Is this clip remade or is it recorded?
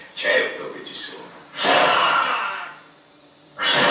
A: remade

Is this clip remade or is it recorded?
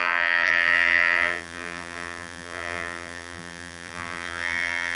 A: remade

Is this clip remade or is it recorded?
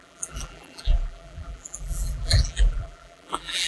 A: remade